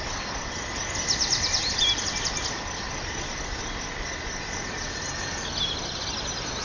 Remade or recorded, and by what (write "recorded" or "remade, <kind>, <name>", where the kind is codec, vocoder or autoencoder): recorded